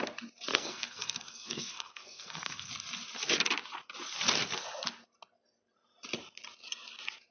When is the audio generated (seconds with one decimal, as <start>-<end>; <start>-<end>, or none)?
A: 0.5-2.7